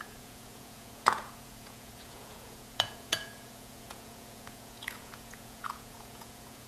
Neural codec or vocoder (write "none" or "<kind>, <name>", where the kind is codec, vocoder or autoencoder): vocoder, Vocos